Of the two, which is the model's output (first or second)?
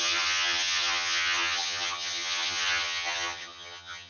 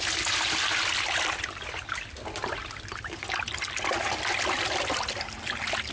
first